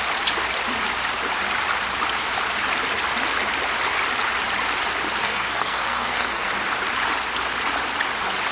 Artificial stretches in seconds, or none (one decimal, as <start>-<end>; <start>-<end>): 5.2-6.5